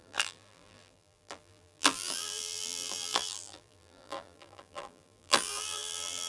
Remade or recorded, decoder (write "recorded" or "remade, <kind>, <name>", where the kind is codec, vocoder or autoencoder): remade, vocoder, BigVGAN v2